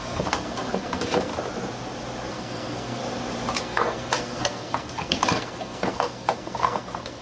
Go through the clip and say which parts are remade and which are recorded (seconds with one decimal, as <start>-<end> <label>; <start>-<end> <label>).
0.0-1.3 remade; 1.3-2.3 recorded; 2.3-3.0 remade; 3.0-3.6 recorded; 3.6-7.2 remade